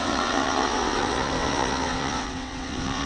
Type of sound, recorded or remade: remade